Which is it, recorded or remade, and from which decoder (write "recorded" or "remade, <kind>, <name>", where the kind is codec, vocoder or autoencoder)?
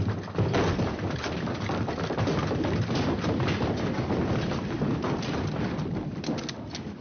recorded